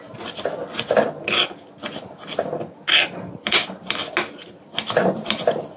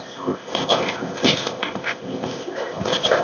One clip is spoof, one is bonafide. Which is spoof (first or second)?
second